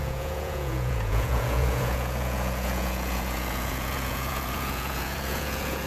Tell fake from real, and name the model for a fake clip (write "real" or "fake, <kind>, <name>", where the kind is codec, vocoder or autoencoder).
fake, vocoder, Vocos